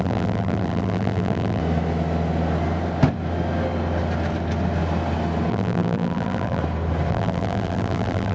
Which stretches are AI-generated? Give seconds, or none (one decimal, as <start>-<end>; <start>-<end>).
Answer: 0.0-1.6; 5.5-6.6; 7.1-8.3